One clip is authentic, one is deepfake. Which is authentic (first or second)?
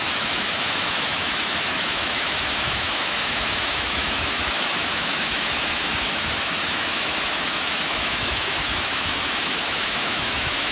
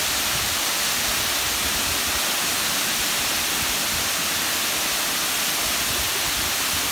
second